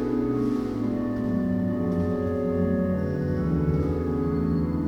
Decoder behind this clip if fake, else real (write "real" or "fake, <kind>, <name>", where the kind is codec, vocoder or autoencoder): real